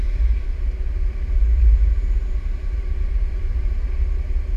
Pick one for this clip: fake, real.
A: fake